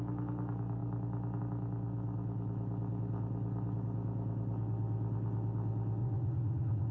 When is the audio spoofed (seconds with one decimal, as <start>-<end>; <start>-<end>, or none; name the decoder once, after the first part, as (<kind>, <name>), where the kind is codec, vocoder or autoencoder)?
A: 6.0-6.9 (vocoder, Vocos)